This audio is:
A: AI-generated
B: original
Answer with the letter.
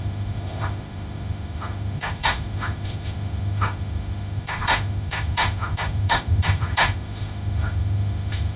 A